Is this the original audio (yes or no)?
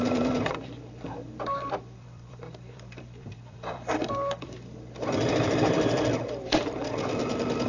no